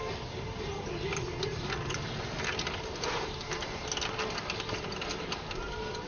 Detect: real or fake real